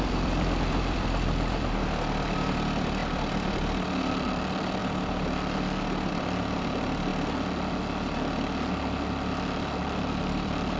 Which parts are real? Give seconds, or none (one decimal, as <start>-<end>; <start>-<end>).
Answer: 4.8-6.1; 7.1-10.2